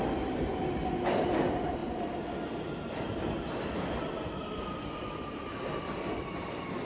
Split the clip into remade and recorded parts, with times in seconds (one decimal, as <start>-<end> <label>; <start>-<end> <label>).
0.0-6.9 recorded